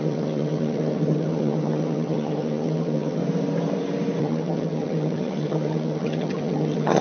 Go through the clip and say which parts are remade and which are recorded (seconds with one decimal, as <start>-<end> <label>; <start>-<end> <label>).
0.0-3.2 remade; 3.2-4.2 recorded; 4.2-7.0 remade